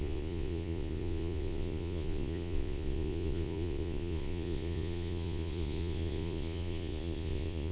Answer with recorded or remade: remade